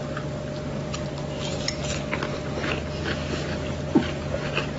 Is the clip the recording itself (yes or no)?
yes